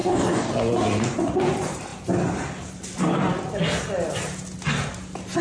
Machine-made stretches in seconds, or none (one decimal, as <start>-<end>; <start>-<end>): 0.0-0.5